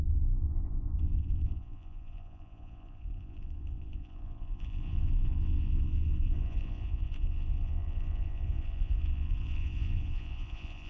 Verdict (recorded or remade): remade